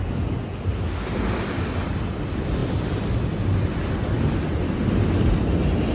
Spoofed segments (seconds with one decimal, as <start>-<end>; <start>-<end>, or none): none